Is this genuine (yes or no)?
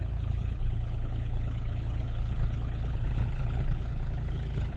no